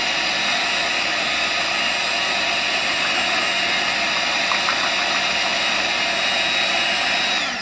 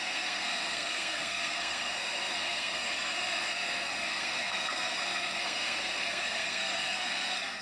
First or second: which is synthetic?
second